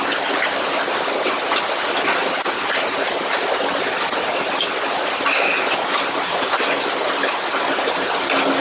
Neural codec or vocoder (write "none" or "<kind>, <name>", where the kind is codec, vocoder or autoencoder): none